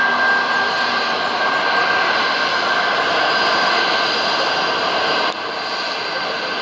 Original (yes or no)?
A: yes